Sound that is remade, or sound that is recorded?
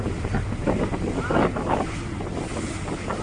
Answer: recorded